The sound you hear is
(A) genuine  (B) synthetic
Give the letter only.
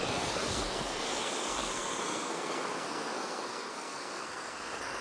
B